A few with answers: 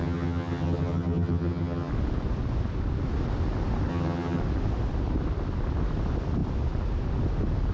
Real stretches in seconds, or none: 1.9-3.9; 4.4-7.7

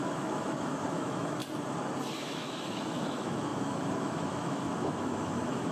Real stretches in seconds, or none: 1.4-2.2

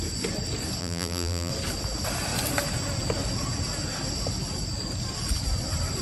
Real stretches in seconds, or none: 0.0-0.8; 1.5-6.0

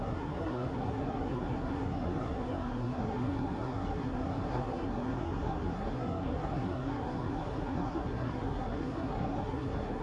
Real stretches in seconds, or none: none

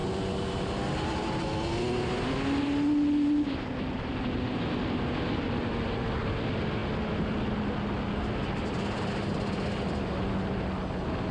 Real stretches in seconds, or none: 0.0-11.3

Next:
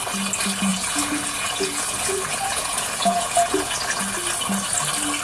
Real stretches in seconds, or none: 0.0-0.7; 3.7-5.2